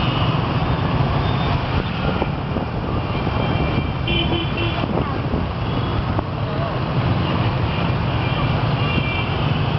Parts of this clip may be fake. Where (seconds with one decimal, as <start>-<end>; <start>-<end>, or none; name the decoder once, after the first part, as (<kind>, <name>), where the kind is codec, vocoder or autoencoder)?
none